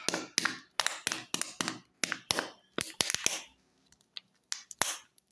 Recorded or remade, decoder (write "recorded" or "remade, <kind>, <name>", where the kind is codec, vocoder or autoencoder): recorded